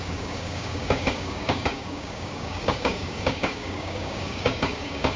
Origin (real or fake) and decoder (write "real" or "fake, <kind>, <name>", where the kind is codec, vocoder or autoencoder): fake, codec, DAC